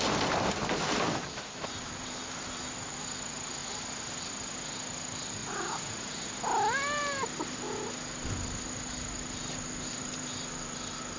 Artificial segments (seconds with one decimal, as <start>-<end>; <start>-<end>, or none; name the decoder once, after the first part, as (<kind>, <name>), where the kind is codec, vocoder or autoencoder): 5.4-6.3 (vocoder, Vocos)